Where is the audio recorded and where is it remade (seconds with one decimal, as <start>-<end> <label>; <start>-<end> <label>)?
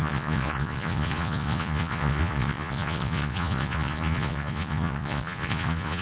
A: 0.0-6.0 remade